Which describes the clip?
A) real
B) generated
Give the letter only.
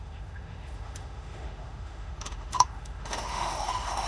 B